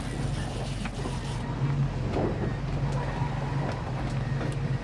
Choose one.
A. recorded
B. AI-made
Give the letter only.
A